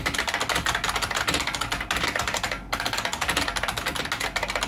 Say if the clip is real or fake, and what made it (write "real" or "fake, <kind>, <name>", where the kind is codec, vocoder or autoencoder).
real